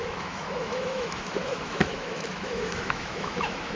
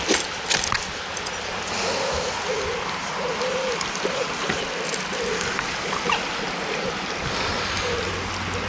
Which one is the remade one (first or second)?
first